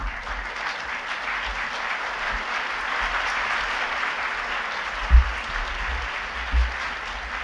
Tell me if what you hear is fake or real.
real